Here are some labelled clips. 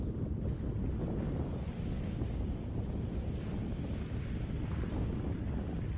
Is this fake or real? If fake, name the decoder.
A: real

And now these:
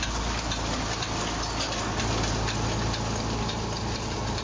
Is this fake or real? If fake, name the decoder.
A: real